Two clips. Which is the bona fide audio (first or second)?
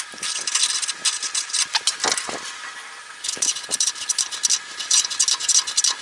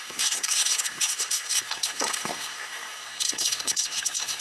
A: first